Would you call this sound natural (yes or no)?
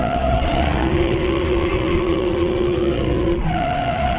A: no